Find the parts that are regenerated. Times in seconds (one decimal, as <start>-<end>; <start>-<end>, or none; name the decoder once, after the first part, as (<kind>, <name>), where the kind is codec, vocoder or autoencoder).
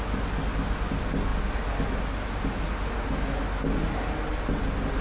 none